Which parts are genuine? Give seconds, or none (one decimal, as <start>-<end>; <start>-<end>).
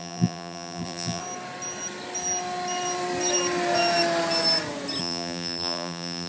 1.2-5.0